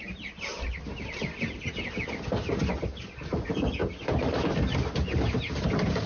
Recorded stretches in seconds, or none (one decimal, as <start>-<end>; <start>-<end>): 0.0-6.1

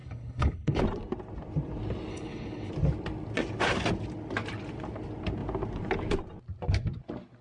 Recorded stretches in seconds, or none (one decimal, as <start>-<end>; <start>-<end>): 0.8-2.1; 2.7-7.4

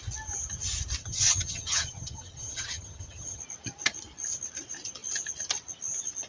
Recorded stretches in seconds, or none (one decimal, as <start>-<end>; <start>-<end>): 0.0-1.0; 3.4-6.3

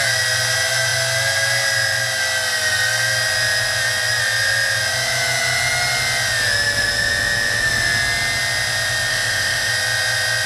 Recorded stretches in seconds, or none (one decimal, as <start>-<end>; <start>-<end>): 0.0-9.1; 9.7-10.5

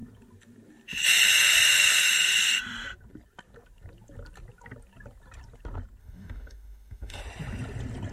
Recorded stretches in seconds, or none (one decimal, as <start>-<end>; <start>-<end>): 0.0-6.0; 7.2-8.1